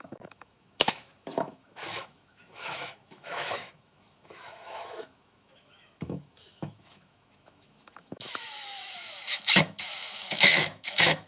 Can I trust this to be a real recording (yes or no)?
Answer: no